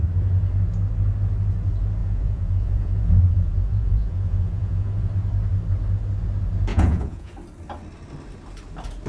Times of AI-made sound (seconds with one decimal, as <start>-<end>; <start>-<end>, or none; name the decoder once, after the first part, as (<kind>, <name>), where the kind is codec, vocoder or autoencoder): 2.0-5.1 (vocoder, Vocos); 6.7-7.3